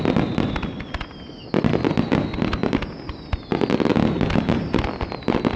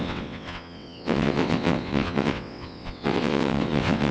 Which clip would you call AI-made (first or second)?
second